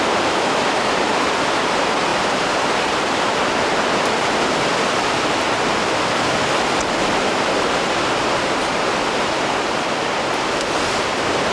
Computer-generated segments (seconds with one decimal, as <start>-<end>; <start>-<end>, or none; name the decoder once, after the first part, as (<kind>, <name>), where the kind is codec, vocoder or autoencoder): 2.1-3.2 (vocoder, BigVGAN v2)